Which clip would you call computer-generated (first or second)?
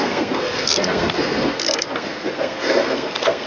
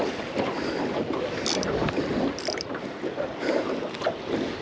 first